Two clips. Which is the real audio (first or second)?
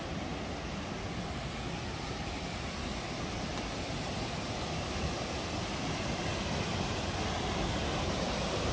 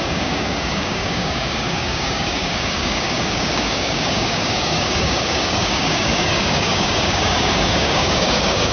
first